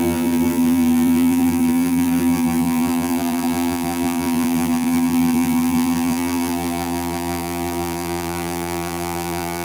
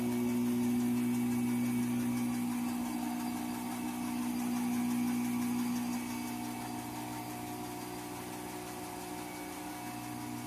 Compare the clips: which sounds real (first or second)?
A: second